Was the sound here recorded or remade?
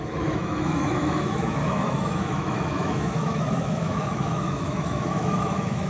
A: remade